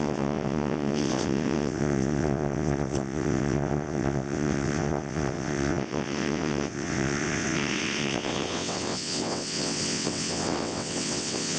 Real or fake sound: fake